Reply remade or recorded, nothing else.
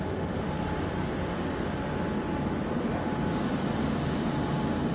recorded